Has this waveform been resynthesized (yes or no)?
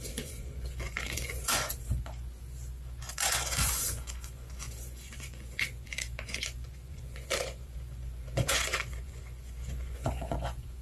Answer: yes